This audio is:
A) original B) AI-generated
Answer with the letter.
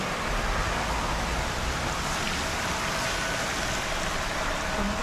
A